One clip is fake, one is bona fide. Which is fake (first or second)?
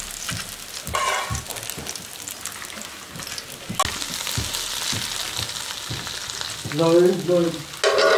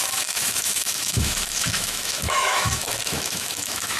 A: second